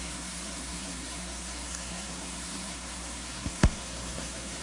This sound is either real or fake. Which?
fake